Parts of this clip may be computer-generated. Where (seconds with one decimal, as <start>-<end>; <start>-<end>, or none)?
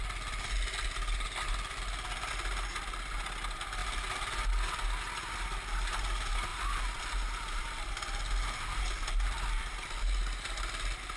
none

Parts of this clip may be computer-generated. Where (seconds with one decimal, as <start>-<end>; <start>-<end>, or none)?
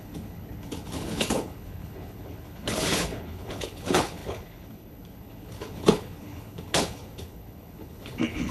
0.0-8.5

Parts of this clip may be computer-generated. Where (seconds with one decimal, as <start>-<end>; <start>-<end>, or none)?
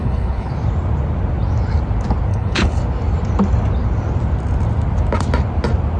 0.0-0.5; 2.3-2.8